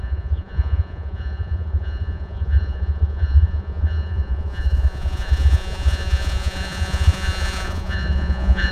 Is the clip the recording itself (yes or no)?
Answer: no